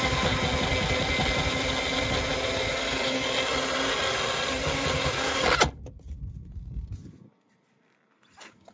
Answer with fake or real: real